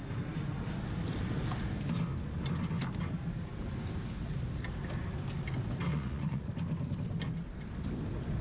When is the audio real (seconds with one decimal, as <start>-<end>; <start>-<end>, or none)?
0.0-5.9; 6.5-8.4